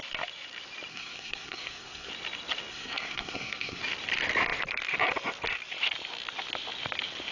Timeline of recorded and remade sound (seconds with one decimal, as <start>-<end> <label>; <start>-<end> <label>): 0.0-0.9 recorded; 0.9-2.1 remade; 2.1-2.7 recorded; 2.7-3.8 remade; 3.8-7.3 recorded

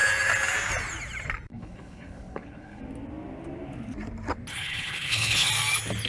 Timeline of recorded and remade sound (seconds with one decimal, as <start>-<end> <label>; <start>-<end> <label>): 0.0-1.5 recorded; 1.5-2.8 remade; 2.8-4.5 recorded; 4.5-5.5 remade; 5.5-6.1 recorded

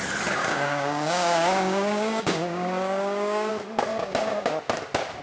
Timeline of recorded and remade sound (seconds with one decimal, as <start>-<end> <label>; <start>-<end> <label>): 0.0-0.4 recorded; 0.4-3.5 remade; 3.5-3.9 recorded; 3.9-4.5 remade; 4.5-5.2 recorded